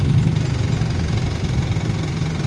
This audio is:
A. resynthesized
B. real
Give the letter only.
B